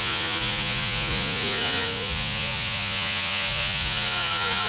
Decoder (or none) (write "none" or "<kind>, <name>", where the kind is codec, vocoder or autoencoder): vocoder, Vocos